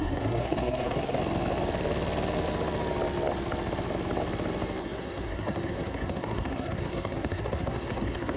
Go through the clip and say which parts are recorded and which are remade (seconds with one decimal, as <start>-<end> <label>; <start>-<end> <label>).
0.0-1.2 remade; 1.2-4.8 recorded; 4.8-8.4 remade